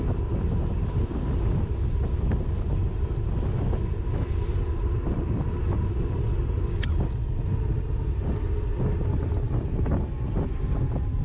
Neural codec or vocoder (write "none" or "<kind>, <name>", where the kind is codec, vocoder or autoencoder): none